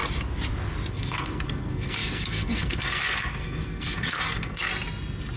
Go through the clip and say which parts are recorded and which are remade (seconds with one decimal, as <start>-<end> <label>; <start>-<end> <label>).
0.0-0.9 recorded; 0.9-4.7 remade; 4.7-5.4 recorded

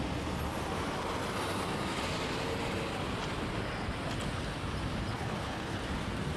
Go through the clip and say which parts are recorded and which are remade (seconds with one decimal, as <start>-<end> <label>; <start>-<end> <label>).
0.0-5.1 recorded; 5.1-5.8 remade; 5.8-6.4 recorded

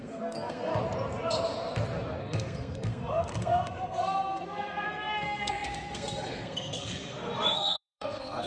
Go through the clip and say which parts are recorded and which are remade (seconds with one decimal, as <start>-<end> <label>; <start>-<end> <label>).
0.0-0.7 remade; 0.7-2.2 recorded; 2.2-8.5 remade

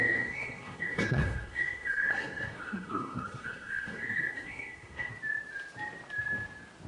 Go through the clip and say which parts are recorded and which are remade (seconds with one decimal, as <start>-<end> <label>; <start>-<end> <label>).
0.0-5.1 remade; 5.1-6.9 recorded

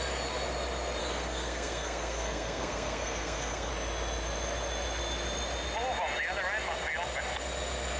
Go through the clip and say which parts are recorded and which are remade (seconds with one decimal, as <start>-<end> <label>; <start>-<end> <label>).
0.0-1.0 recorded; 1.0-3.7 remade; 3.7-8.0 recorded

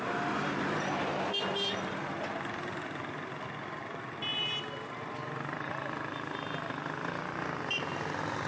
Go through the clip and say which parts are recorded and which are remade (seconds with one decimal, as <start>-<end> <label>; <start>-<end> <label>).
0.0-8.5 recorded

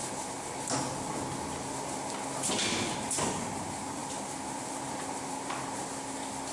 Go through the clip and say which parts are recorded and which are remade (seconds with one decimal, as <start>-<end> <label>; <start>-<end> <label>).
0.0-6.5 recorded